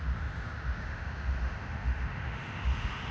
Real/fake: fake